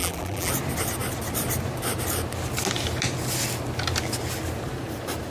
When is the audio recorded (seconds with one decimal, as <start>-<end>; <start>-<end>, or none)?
0.5-5.3